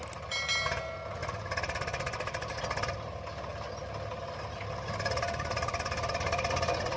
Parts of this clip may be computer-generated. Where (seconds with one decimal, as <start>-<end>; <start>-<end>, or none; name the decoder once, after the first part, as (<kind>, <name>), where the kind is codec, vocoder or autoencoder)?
1.2-2.6 (vocoder, BigVGAN v2); 3.5-6.1